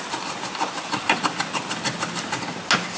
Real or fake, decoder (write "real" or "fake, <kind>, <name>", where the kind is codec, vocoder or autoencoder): real